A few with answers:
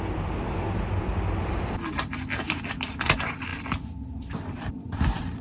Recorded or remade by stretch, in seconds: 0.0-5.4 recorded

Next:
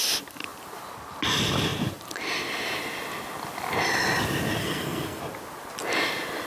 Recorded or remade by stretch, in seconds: 0.0-4.6 recorded; 4.6-5.2 remade; 5.2-6.5 recorded

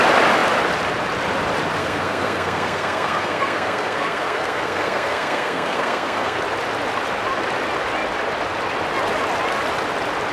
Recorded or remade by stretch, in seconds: 0.0-1.8 recorded; 1.8-6.4 remade; 6.4-10.3 recorded

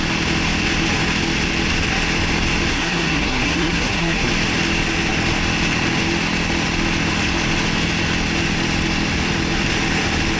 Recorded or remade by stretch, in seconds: 0.0-2.7 recorded; 2.7-4.3 remade; 4.3-10.4 recorded

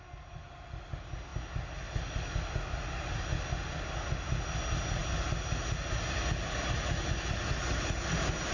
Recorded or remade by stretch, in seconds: 0.0-8.5 recorded

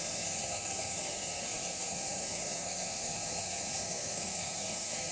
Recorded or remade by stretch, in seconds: 0.0-5.1 remade

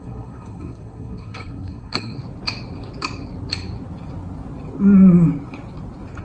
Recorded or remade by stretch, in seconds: 0.0-2.2 remade; 2.2-6.2 recorded

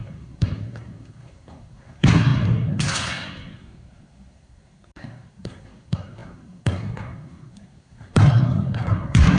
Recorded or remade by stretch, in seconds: 0.0-9.4 remade